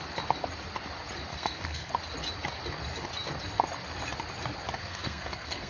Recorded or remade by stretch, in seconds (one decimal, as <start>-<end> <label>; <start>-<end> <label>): 0.0-1.3 recorded; 1.3-1.9 remade; 1.9-4.8 recorded; 4.8-5.7 remade